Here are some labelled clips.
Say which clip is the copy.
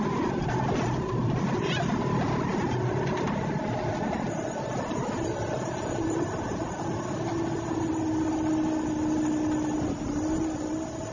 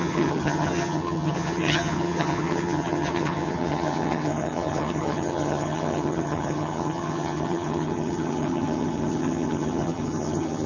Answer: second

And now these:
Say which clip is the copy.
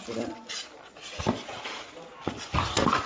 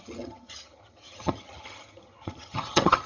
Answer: second